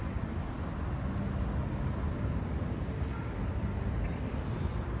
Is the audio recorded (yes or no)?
yes